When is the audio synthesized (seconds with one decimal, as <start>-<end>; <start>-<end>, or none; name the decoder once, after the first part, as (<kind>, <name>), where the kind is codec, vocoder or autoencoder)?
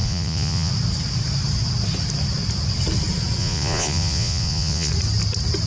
0.0-0.7 (vocoder, Vocos); 3.4-4.9